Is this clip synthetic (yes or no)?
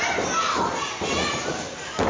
no